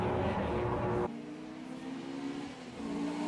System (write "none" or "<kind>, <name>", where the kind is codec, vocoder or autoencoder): none